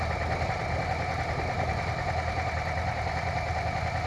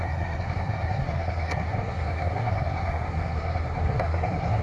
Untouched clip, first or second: first